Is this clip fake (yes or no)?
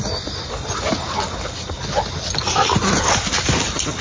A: no